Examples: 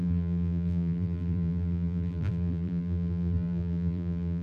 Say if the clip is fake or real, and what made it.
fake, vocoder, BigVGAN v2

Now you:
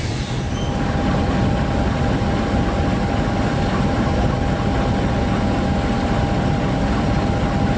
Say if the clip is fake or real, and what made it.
real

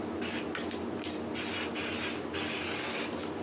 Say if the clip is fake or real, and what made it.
real